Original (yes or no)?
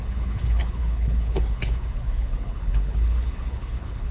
no